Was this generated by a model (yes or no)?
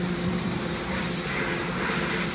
yes